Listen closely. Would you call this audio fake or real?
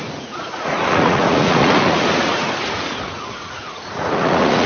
fake